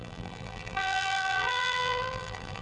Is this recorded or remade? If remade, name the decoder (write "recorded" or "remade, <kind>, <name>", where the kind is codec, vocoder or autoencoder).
remade, vocoder, BigVGAN v2